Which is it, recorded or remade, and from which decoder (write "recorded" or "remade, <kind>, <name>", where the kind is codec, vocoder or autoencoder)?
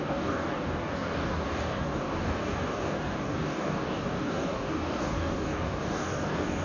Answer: remade, codec, DAC